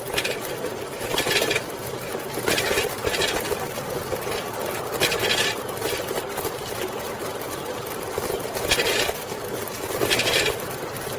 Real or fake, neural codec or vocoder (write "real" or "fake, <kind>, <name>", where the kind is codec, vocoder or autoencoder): real